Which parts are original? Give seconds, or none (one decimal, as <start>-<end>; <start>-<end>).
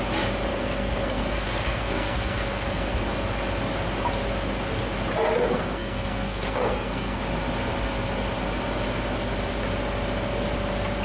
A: 0.0-0.5; 3.0-5.4; 7.2-11.0